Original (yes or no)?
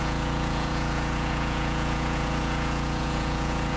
no